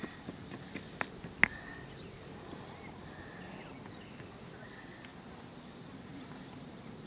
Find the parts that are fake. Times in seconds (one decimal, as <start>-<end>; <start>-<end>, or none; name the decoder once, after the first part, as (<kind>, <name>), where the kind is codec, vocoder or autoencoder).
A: 6.1-7.1 (vocoder, BigVGAN v2)